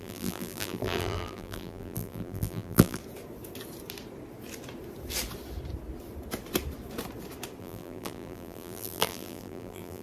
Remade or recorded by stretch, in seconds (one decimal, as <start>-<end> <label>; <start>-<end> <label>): 0.0-3.0 remade; 3.0-7.6 recorded; 7.6-10.0 remade